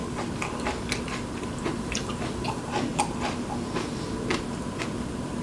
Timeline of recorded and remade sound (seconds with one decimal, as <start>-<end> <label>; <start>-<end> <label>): 0.0-5.4 recorded